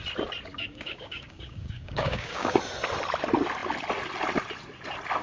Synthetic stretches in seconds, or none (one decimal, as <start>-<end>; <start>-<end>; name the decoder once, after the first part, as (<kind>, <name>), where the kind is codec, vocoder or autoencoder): 0.5-2.6 (codec, DAC)